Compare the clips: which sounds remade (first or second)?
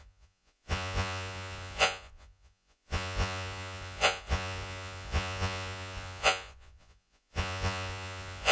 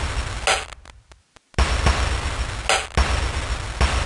first